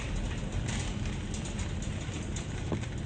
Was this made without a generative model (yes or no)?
yes